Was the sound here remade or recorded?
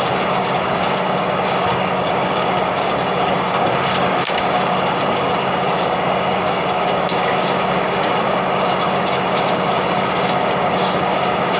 remade